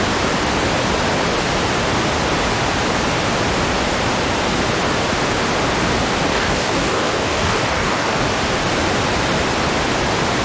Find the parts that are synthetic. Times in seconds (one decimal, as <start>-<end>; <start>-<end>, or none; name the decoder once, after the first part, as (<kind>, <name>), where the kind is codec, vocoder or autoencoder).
6.3-8.2 (codec, DAC)